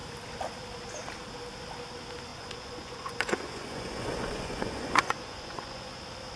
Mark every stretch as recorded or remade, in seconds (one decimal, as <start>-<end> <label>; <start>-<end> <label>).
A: 0.0-2.3 recorded; 2.3-6.0 remade; 6.0-6.4 recorded